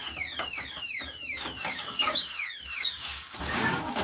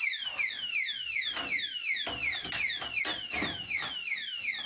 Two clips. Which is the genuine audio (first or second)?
second